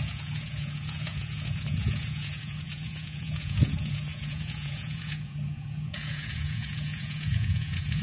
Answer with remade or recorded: remade